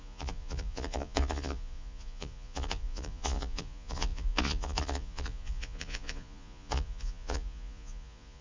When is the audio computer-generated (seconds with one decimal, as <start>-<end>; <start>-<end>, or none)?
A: 0.0-8.4